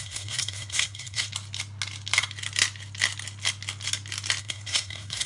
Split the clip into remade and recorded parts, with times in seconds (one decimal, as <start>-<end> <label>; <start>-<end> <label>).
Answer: 0.0-1.3 remade; 1.3-4.4 recorded; 4.4-5.3 remade